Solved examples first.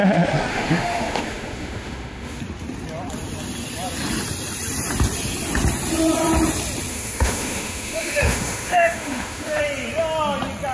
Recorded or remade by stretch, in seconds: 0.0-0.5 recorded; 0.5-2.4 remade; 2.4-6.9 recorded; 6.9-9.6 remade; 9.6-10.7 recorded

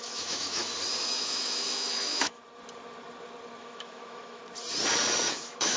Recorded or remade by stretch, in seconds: 0.0-0.6 remade; 0.6-1.1 recorded; 1.1-2.4 remade; 2.4-3.6 recorded; 3.6-4.4 remade; 4.4-5.3 recorded; 5.3-5.8 remade

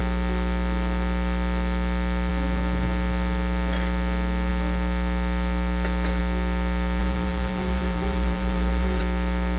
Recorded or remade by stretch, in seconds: 0.0-7.0 recorded; 7.0-9.0 remade; 9.0-9.6 recorded

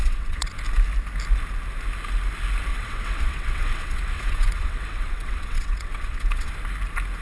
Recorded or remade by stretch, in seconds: 0.0-0.5 remade; 0.5-2.7 recorded; 2.7-6.5 remade; 6.5-7.2 recorded

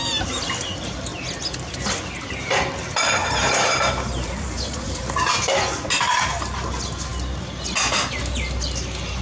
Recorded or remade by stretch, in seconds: 0.0-3.2 recorded; 3.2-5.1 remade; 5.1-9.2 recorded

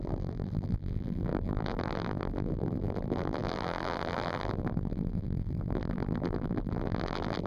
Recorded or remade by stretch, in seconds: 0.0-7.5 remade